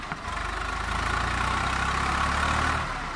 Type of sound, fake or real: real